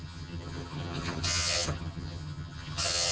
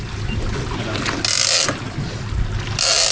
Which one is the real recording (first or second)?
second